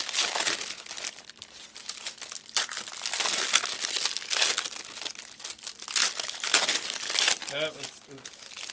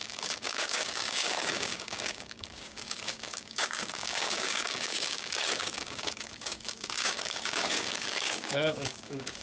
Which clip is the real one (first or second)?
first